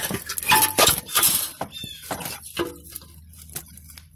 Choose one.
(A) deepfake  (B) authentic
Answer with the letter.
B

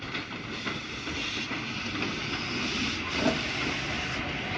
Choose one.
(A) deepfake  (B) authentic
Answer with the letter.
B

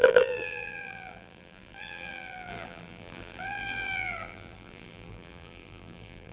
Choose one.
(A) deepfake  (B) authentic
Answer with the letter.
A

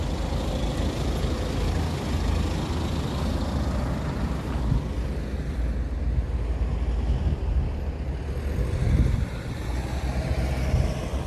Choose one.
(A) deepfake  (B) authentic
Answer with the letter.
B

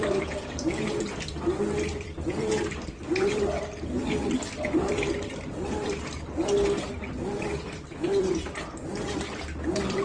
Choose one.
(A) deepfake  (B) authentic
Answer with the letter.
A